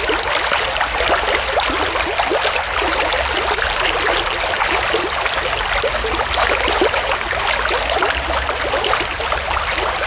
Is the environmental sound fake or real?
real